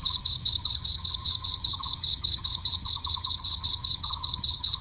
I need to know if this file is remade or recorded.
remade